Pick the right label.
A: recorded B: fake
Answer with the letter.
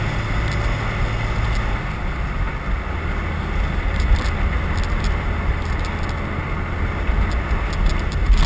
A